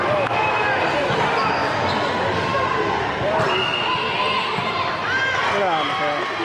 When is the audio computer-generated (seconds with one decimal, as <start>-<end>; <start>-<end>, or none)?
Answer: 2.5-4.9